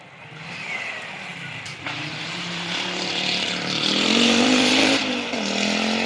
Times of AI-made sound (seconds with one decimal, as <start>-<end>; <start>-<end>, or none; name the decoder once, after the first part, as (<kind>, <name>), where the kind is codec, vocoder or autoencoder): 1.3-5.0 (vocoder, BigVGAN v2)